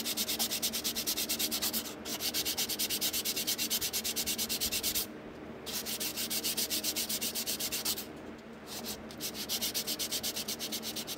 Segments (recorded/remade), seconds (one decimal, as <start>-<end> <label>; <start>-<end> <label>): 0.0-6.1 recorded; 6.1-8.3 remade; 8.3-11.2 recorded